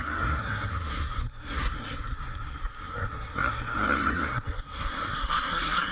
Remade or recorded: remade